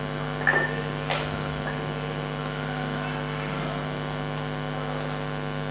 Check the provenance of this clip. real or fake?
real